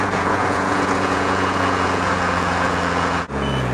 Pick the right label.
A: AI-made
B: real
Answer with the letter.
A